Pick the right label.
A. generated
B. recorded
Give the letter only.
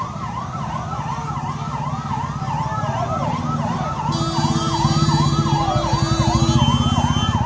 B